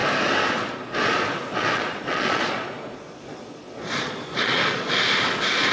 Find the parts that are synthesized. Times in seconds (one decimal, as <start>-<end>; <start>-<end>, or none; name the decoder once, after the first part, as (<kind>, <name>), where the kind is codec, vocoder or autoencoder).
1.5-4.9 (vocoder, Vocos)